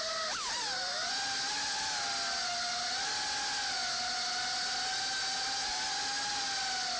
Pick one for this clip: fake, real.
real